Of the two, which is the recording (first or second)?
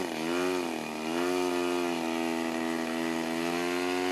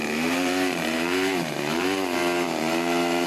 first